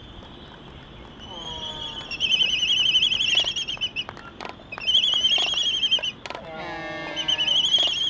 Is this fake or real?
real